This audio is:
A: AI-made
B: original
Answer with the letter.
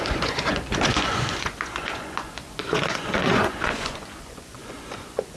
A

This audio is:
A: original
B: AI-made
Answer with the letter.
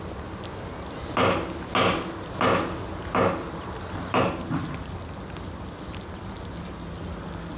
A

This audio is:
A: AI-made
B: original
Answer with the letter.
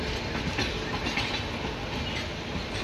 B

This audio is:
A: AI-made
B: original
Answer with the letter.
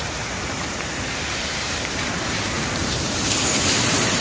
A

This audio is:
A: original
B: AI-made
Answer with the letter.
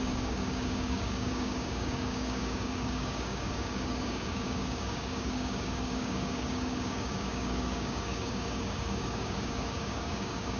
B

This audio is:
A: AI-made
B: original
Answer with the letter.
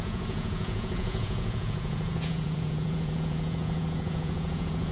A